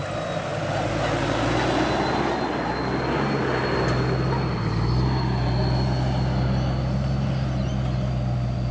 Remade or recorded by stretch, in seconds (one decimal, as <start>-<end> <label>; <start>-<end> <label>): 0.0-8.7 recorded